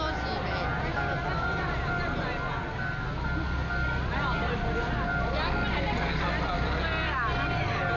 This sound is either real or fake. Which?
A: real